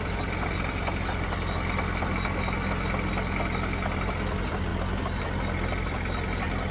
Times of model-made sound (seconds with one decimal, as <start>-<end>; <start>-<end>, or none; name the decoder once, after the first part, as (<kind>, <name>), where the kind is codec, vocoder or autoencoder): none